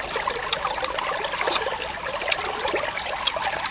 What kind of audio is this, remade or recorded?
recorded